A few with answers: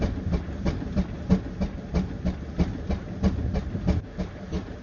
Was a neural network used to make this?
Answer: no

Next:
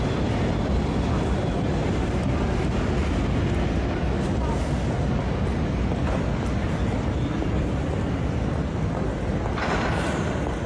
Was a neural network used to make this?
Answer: no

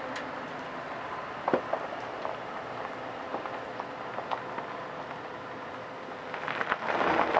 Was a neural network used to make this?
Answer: no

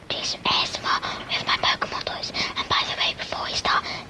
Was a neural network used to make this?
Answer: yes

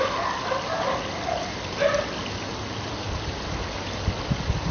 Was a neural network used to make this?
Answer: no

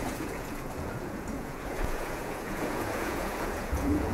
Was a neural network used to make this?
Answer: yes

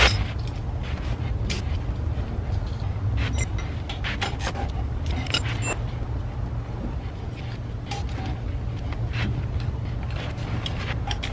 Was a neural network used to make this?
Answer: no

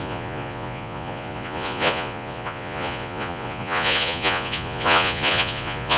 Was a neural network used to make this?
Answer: yes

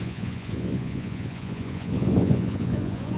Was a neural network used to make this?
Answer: yes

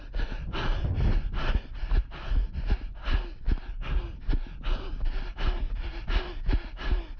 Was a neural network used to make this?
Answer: no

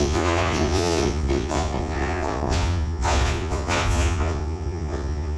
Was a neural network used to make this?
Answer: yes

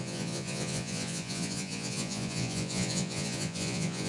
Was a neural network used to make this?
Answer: yes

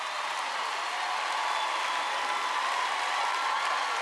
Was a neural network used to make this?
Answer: no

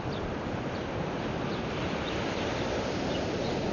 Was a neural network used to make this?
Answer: no